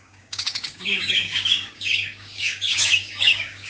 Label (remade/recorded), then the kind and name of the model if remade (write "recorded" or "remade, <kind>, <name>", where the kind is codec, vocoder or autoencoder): remade, codec, DAC